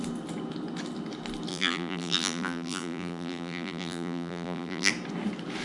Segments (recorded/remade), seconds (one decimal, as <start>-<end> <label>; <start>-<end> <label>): 0.0-1.5 recorded; 1.5-4.9 remade; 4.9-5.6 recorded